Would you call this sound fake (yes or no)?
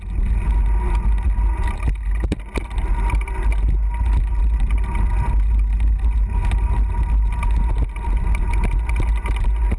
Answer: no